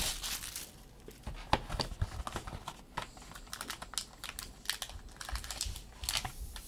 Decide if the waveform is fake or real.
real